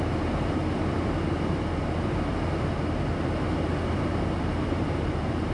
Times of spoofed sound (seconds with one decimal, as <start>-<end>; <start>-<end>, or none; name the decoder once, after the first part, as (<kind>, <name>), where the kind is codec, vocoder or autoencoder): 0.0-0.6 (vocoder, BigVGAN v2); 3.9-5.5